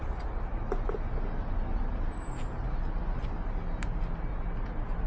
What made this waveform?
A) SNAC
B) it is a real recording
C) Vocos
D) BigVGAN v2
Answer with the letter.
B